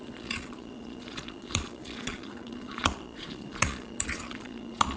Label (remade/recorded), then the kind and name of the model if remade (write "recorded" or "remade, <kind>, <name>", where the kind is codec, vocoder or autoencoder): remade, vocoder, Vocos